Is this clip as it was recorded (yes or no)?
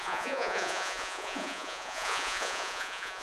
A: no